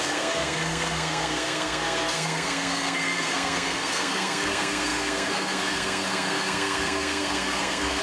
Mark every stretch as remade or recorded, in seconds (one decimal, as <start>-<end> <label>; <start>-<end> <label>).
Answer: 0.0-8.0 remade